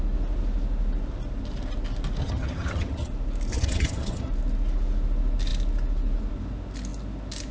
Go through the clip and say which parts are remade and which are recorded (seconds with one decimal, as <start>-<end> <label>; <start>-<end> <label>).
0.0-2.2 recorded; 2.2-3.1 remade; 3.1-3.5 recorded; 3.5-4.3 remade; 4.3-7.5 recorded